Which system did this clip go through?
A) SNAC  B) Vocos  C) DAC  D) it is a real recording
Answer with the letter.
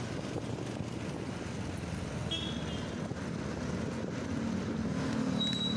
D